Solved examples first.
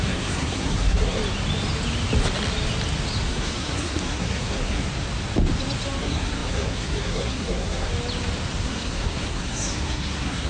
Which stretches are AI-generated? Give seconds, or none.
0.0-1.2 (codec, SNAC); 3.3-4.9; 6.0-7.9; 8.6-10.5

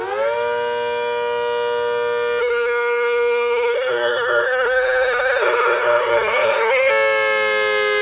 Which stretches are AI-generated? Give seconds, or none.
2.4-6.9 (codec, SNAC)

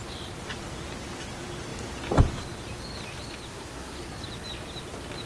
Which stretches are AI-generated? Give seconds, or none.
3.5-4.0 (codec, SNAC)

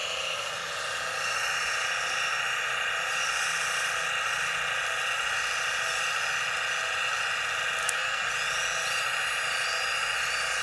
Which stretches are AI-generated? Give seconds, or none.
7.8-8.3 (codec, SNAC)

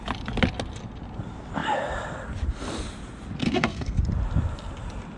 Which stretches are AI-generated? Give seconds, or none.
3.4-4.0 (codec, SNAC)

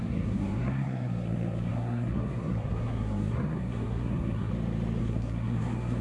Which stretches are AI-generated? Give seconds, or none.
0.0-4.5 (codec, SNAC); 5.0-6.0